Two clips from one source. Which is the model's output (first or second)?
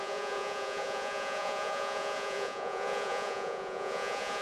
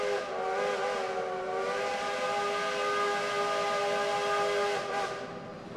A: first